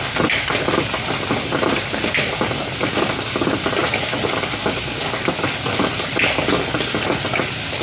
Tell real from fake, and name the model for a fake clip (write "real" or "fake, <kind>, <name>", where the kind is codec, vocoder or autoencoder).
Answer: real